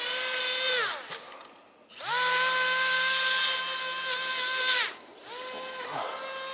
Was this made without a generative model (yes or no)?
yes